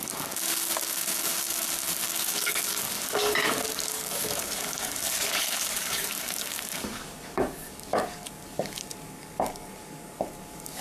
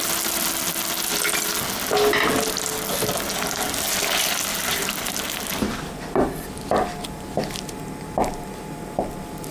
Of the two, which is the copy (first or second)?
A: first